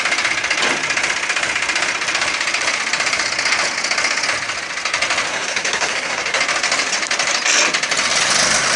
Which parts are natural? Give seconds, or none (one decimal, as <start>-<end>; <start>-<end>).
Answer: 0.0-5.3; 6.4-8.8

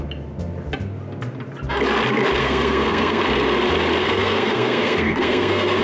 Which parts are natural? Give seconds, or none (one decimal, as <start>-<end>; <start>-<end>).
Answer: 0.0-2.4; 3.2-4.0

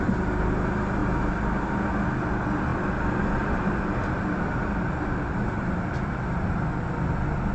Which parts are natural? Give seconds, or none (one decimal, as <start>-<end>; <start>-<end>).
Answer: 0.0-7.5